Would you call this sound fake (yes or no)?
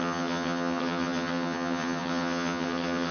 yes